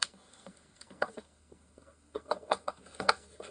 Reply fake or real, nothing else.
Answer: fake